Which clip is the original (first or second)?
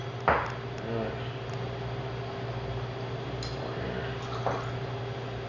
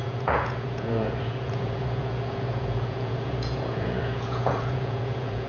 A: first